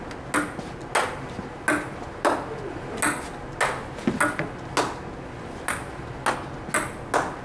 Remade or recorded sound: recorded